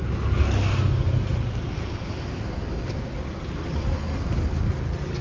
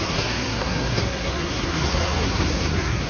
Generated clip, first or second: second